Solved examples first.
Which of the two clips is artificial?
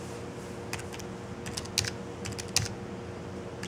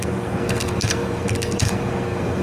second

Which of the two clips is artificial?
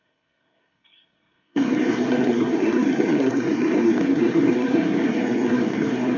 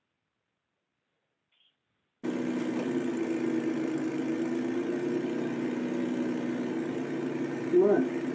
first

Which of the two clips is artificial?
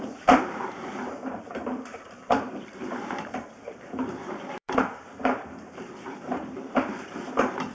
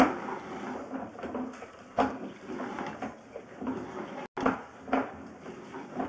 first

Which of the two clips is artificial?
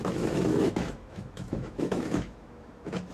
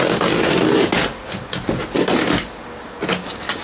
first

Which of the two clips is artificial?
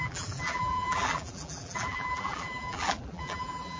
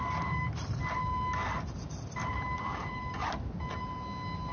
first